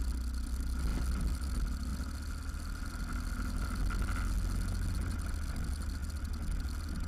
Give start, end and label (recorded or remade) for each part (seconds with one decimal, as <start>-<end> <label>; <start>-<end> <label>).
0.0-7.1 recorded